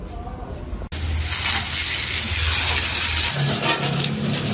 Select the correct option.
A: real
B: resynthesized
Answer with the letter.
A